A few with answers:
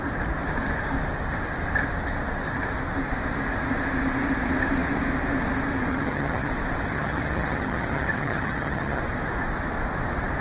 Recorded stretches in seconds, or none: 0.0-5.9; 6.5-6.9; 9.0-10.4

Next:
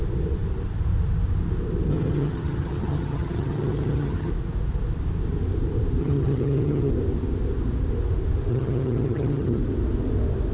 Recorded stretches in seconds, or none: 0.0-1.9; 4.3-6.0; 6.9-8.5; 9.6-10.5